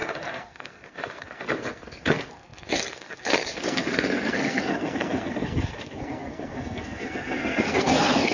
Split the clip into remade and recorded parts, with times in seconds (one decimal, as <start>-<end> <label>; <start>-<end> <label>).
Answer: 0.0-8.3 remade